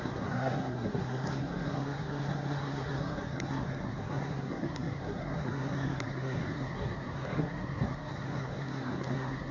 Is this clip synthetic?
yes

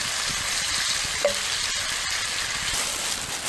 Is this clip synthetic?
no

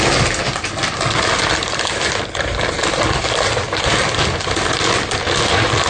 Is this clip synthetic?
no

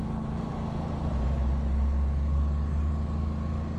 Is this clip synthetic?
no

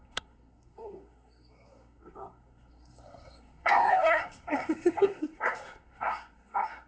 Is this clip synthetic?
yes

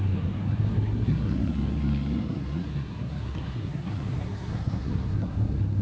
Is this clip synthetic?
yes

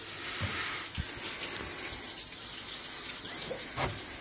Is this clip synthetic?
no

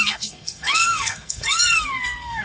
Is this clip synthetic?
yes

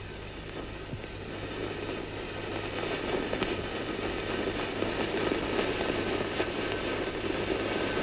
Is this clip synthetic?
no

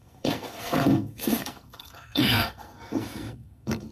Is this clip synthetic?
yes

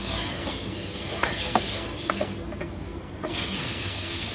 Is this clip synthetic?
yes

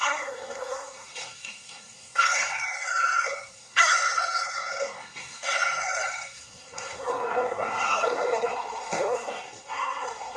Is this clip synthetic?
yes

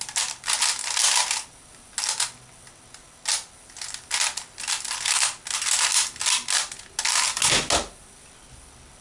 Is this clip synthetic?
no